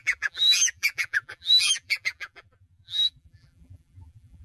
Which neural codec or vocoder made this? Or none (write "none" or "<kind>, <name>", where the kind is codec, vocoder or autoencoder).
vocoder, BigVGAN v2